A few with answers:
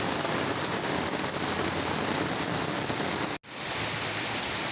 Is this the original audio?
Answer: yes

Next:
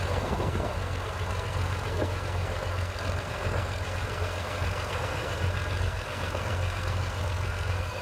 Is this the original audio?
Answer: no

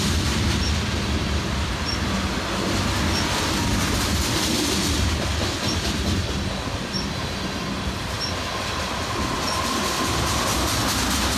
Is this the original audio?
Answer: yes